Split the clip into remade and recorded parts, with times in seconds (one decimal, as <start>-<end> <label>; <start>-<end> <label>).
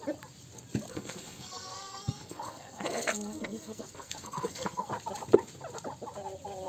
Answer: 0.0-0.9 recorded; 0.9-4.9 remade; 4.9-6.7 recorded